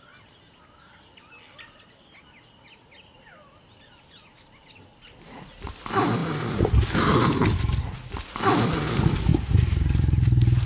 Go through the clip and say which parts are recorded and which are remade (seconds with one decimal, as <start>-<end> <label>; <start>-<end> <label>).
0.0-9.3 recorded; 9.3-10.7 remade